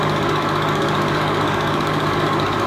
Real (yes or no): no